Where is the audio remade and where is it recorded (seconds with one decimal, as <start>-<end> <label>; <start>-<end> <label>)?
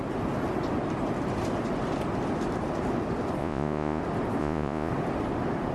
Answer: 0.0-3.4 recorded; 3.4-4.0 remade; 4.0-4.4 recorded; 4.4-4.9 remade; 4.9-5.7 recorded